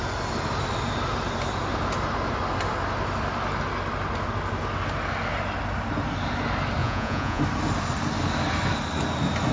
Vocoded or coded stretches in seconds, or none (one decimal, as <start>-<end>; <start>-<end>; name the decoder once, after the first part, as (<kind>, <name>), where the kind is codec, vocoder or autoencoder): 6.8-7.4 (vocoder, Vocos)